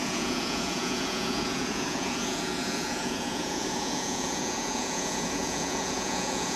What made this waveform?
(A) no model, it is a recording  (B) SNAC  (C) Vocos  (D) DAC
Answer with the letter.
C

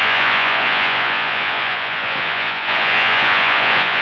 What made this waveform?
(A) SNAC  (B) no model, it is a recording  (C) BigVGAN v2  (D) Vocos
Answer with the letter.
D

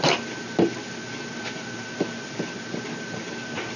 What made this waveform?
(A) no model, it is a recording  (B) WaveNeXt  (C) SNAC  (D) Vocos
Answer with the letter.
A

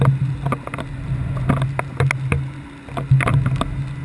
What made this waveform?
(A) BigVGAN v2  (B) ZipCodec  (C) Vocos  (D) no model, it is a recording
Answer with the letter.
D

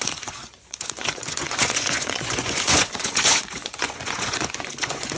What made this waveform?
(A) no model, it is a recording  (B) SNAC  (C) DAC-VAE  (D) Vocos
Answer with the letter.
D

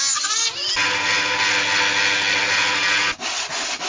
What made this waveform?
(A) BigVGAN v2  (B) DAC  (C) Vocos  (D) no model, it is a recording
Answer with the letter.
D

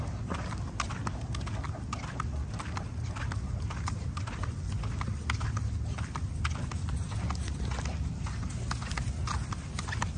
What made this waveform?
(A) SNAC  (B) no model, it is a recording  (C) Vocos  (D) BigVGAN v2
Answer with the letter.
B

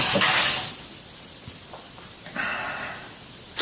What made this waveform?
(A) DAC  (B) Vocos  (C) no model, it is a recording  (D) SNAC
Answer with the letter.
C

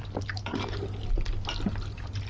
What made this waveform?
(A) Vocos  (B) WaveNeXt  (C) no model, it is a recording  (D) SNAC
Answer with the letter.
C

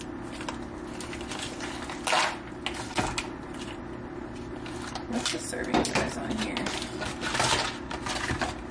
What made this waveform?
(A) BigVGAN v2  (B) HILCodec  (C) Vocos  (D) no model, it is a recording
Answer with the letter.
D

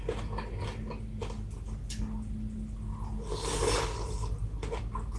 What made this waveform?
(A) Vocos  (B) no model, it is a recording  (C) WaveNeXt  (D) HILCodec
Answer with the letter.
B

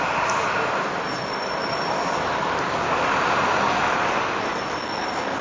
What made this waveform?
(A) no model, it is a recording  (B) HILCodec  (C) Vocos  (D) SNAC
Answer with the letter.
A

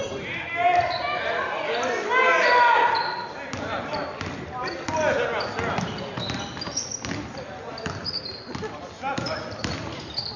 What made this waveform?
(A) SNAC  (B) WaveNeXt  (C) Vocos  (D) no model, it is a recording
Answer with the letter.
D